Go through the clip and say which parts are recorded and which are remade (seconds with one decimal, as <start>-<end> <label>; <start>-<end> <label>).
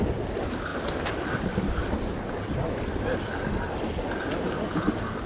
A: 0.0-5.3 recorded